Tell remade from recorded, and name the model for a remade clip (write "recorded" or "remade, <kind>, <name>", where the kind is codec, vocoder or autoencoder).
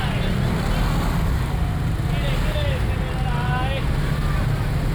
recorded